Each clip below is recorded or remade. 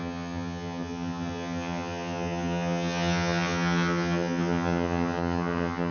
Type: remade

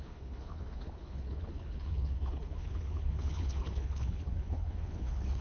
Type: remade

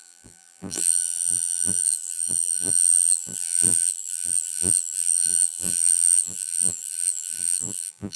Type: remade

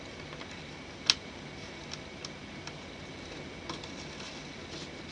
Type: recorded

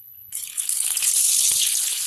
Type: remade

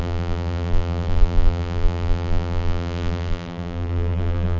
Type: remade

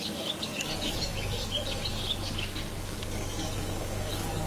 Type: remade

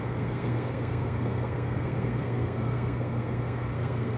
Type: remade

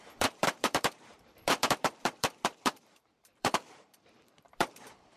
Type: remade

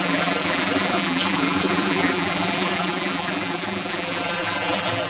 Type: remade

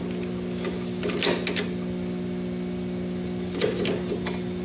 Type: recorded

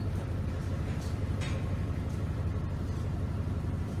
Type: remade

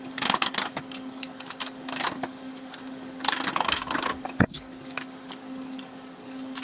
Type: remade